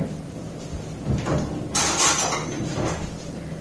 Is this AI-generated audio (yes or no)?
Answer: no